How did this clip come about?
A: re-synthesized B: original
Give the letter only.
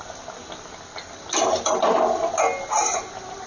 B